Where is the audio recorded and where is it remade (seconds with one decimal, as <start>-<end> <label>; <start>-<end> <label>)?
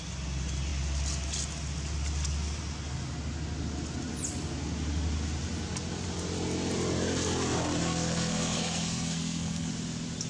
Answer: 0.0-7.8 recorded; 7.8-9.7 remade; 9.7-10.3 recorded